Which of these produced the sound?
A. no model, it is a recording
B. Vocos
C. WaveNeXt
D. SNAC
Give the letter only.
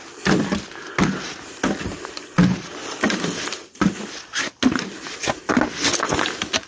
A